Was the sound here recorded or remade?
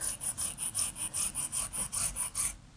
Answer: recorded